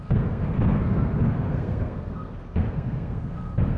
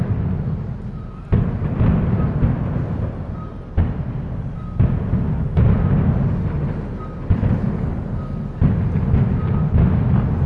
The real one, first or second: second